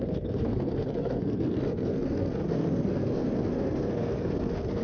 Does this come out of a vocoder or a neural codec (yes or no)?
yes